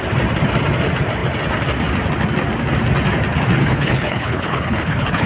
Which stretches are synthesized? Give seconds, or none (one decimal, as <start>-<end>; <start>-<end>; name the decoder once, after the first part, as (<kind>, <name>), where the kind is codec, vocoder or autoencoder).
3.6-5.3 (codec, HILCodec)